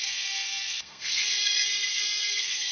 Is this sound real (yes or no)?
no